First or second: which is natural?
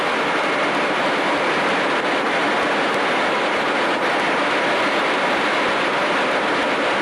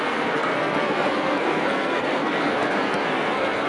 first